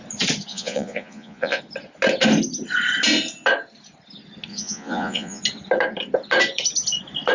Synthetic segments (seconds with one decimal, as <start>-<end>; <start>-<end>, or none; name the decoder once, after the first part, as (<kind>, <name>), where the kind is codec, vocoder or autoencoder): 0.5-1.6 (vocoder, Vocos); 4.5-5.4